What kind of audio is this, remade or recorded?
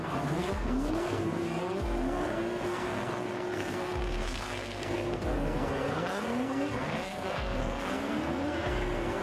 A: remade